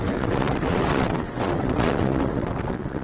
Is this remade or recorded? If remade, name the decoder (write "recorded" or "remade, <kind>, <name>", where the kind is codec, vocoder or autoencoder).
remade, vocoder, WaveNeXt